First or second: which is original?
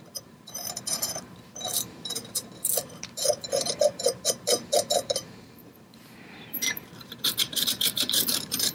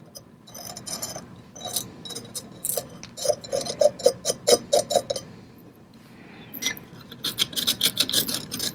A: second